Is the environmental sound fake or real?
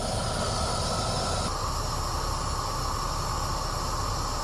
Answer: real